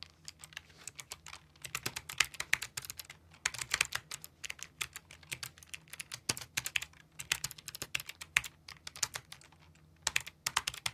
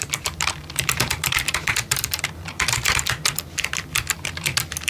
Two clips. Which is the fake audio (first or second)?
second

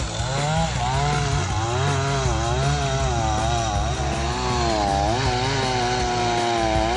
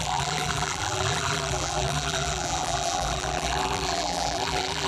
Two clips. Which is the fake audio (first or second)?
second